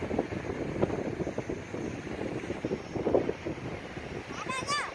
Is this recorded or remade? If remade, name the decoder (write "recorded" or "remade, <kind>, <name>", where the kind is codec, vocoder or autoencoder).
recorded